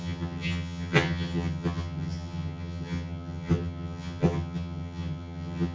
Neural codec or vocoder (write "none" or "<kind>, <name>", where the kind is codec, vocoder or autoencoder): vocoder, HiFi-GAN